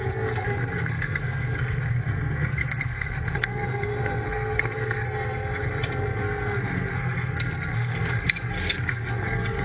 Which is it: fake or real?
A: fake